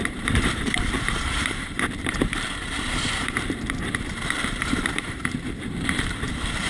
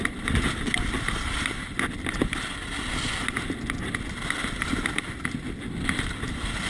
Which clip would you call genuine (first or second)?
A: second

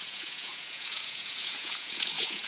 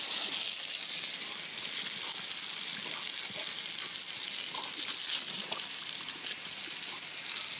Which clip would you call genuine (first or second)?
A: second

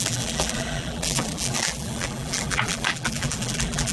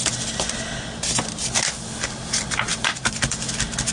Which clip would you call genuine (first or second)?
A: second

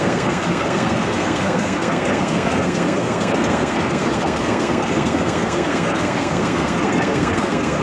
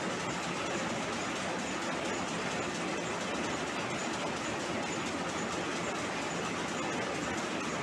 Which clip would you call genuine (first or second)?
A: second